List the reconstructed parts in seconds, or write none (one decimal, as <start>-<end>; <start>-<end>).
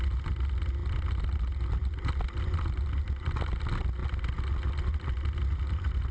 none